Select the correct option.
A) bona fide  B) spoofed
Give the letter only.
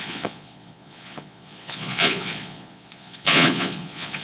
B